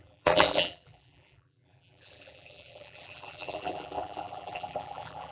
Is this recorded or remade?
remade